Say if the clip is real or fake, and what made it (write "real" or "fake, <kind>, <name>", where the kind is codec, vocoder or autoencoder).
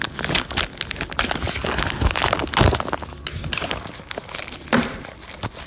real